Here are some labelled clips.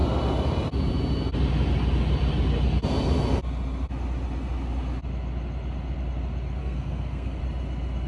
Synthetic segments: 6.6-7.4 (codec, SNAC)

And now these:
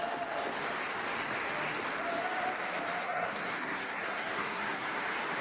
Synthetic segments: 3.0-5.0 (codec, SNAC)

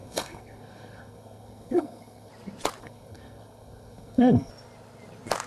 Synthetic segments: 0.0-2.3 (codec, SNAC); 2.8-4.5

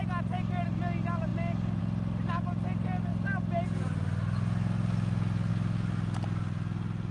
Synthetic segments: none

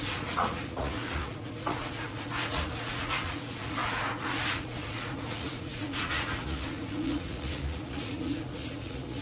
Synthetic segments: 0.0-9.2 (vocoder, Vocos)

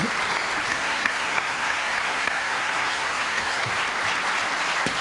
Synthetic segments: 0.7-3.7 (codec, SNAC)

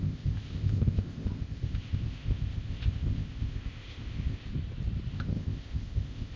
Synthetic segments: 0.0-4.5 (codec, ZipCodec); 5.1-6.4